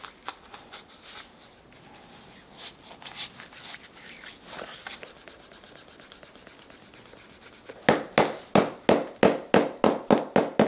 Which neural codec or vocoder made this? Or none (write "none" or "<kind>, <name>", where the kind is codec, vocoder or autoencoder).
none